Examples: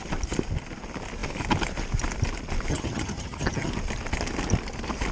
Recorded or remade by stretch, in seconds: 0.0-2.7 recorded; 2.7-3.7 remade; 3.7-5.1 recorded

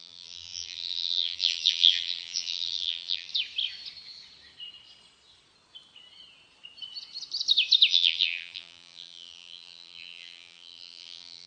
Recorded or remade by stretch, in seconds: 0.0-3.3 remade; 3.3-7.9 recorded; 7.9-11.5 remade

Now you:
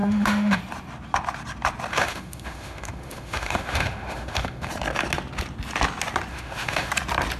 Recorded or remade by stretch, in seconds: 0.0-0.6 remade; 0.6-1.9 recorded; 1.9-4.7 remade; 4.7-6.3 recorded; 6.3-6.9 remade; 6.9-7.4 recorded